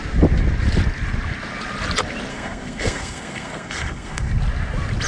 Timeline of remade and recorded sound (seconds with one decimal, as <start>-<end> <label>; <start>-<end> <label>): 0.0-2.3 recorded; 2.3-4.3 remade; 4.3-5.1 recorded

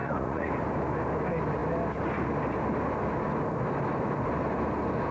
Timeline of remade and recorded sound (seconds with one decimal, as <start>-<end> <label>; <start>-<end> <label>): 0.0-0.5 remade; 0.5-5.1 recorded

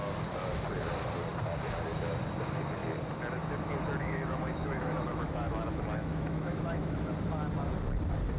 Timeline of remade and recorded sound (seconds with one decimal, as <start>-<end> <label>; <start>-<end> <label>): 0.0-4.0 recorded; 4.0-7.1 remade; 7.1-8.4 recorded